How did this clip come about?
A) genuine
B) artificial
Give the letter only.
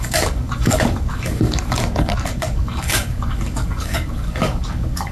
B